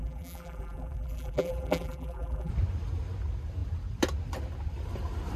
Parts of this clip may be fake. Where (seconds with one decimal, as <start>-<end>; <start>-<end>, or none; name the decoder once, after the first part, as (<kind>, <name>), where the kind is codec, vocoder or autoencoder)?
0.0-2.5 (vocoder, BigVGAN v2)